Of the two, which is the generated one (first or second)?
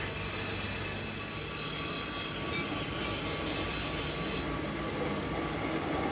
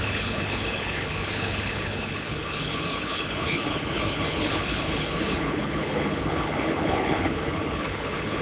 second